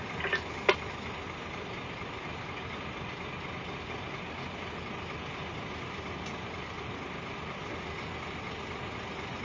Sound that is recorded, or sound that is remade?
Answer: recorded